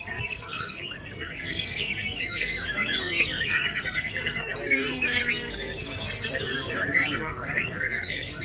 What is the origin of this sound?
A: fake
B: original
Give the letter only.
A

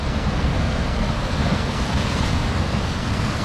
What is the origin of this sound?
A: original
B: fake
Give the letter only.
B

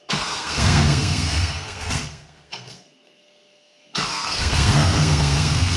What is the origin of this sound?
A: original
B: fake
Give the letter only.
B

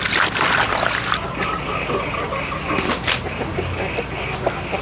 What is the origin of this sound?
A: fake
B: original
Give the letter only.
B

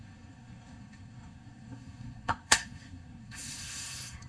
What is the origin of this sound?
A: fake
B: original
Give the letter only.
A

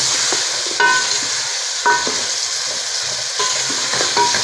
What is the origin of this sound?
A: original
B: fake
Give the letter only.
A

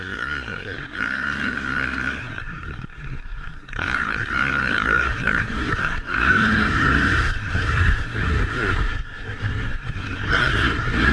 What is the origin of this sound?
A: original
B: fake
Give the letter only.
B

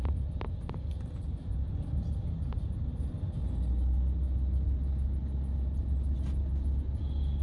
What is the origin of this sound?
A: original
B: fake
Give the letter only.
A